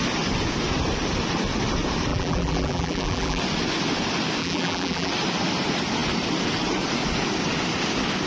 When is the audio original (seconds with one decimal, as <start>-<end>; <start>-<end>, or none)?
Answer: 0.0-2.1; 3.4-4.4; 5.1-8.3